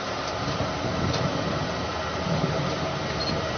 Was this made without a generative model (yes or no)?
yes